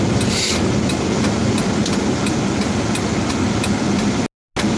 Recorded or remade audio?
recorded